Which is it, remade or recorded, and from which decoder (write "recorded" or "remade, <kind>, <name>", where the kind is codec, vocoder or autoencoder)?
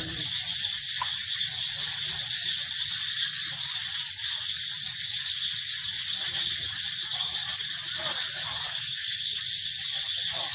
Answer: recorded